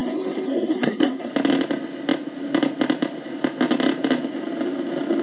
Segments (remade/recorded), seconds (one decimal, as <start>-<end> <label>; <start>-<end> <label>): 0.0-1.3 remade; 1.3-5.2 recorded